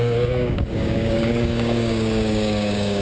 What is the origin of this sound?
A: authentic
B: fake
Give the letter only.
B